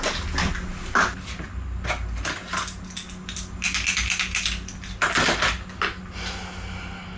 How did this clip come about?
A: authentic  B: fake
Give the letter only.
A